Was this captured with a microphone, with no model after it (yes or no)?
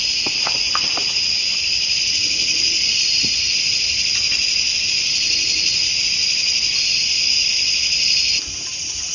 yes